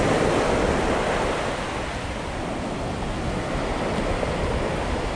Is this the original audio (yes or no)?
yes